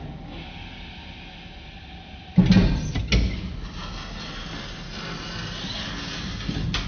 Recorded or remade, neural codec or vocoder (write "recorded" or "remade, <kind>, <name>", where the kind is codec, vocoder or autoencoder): recorded